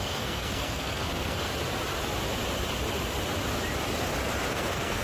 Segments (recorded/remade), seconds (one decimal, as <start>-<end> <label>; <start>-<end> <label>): 0.0-1.5 remade; 1.5-4.5 recorded; 4.5-5.0 remade